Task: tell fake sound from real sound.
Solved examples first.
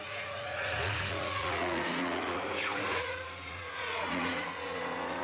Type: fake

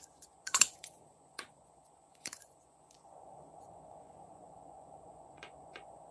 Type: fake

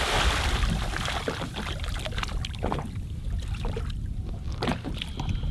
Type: real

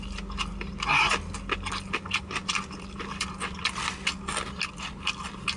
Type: real